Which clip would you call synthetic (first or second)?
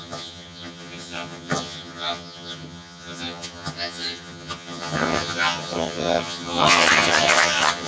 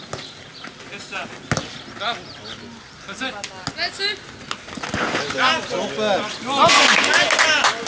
first